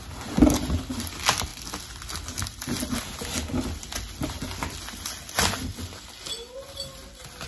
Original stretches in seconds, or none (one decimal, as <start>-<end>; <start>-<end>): 0.0-7.5